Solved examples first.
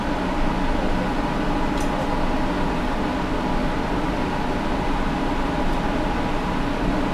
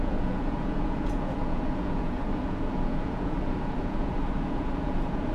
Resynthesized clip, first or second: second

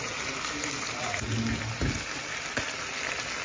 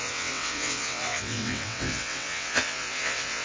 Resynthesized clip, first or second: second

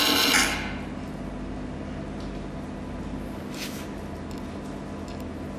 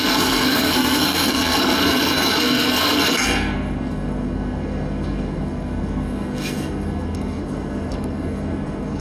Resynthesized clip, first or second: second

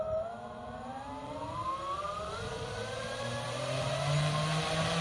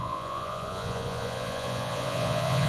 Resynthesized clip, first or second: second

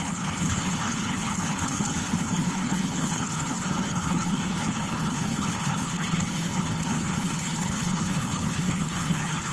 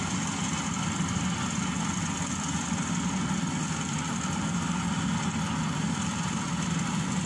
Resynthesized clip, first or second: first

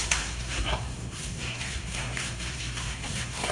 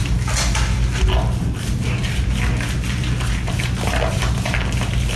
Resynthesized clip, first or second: first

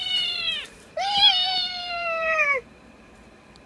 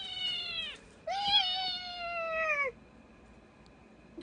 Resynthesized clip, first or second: first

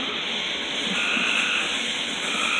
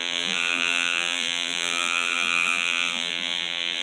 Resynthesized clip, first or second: second